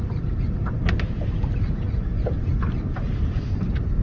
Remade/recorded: recorded